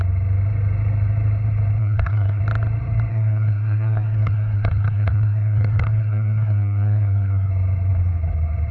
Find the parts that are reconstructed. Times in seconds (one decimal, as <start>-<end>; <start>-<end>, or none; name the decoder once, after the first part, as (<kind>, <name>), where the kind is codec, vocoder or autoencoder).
1.8-2.4 (codec, SNAC); 3.1-7.5